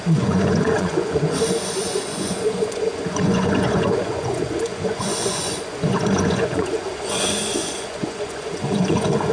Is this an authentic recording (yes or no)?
no